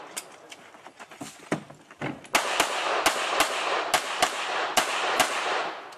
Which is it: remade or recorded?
recorded